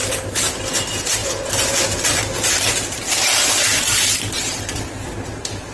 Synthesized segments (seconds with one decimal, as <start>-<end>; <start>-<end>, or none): 0.0-0.6; 1.2-4.6